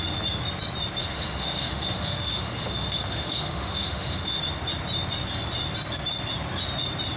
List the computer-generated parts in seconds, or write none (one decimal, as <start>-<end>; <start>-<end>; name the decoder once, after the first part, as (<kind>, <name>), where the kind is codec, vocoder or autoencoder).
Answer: 1.0-4.4 (autoencoder, DAC-VAE)

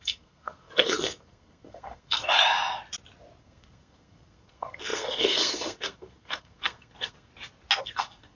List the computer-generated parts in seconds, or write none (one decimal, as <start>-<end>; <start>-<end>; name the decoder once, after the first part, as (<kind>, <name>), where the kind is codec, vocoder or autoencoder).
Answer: 0.0-2.4 (codec, SNAC); 3.4-7.3; 7.8-8.4